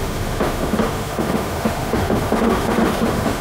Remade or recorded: remade